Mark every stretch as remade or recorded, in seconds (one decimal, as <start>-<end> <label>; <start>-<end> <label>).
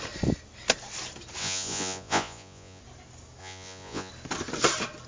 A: 0.0-1.4 recorded; 1.4-2.8 remade; 2.8-3.4 recorded; 3.4-4.1 remade; 4.1-5.1 recorded